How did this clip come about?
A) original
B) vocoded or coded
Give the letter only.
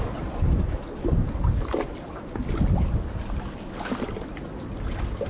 A